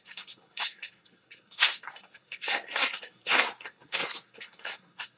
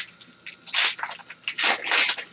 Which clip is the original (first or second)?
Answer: second